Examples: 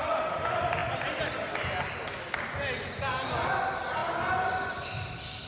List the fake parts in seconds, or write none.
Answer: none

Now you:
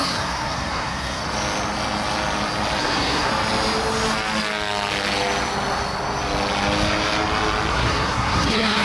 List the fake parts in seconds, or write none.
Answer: 0.0-1.2; 2.8-3.3; 7.7-8.8

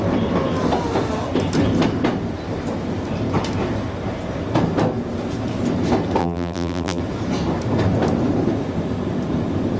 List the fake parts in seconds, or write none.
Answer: 6.2-7.0

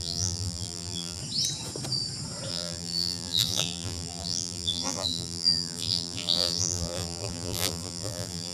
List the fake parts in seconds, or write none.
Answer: 0.0-1.2; 2.5-8.5